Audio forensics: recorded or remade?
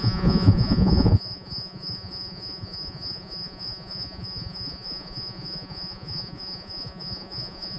remade